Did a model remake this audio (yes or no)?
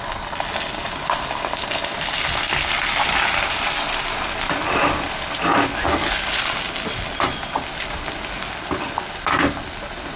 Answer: no